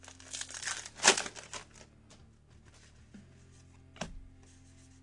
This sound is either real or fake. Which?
real